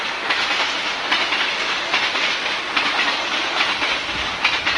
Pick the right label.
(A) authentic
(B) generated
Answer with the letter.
A